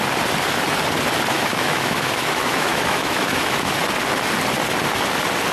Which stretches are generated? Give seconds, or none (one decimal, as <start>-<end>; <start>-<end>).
1.3-3.7